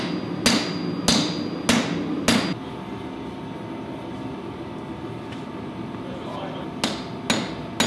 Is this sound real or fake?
real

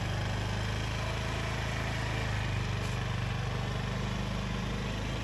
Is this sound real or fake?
real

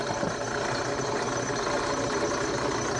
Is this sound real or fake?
real